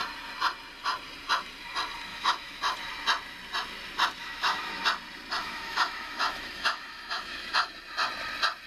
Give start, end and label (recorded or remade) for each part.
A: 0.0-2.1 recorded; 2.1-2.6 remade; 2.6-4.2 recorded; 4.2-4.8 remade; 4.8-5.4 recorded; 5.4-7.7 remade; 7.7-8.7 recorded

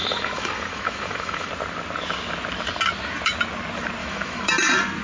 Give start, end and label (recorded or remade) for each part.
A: 0.0-1.5 remade; 1.5-4.0 recorded; 4.0-4.5 remade; 4.5-5.0 recorded

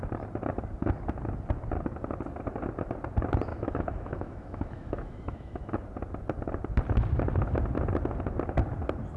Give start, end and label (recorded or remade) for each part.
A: 0.0-3.5 recorded; 3.5-5.7 remade; 5.7-9.2 recorded

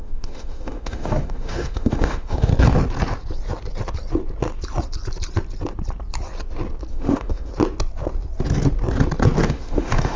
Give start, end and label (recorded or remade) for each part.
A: 0.0-2.5 remade; 2.5-6.9 recorded; 6.9-7.5 remade; 7.5-9.4 recorded; 9.4-10.2 remade

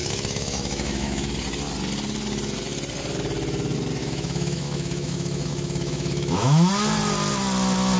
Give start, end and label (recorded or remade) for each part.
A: 0.0-1.3 remade; 1.3-4.0 recorded; 4.0-6.7 remade; 6.7-8.0 recorded

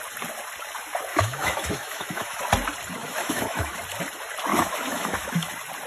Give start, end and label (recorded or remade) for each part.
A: 0.0-1.1 recorded; 1.1-2.4 remade; 2.4-3.0 recorded; 3.0-3.8 remade; 3.8-4.5 recorded; 4.5-5.5 remade; 5.5-5.9 recorded

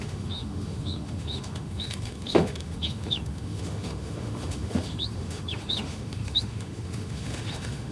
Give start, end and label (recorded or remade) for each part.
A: 0.0-7.9 remade

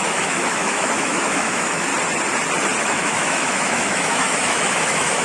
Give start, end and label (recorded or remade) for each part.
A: 0.0-1.9 remade; 1.9-2.8 recorded; 2.8-5.2 remade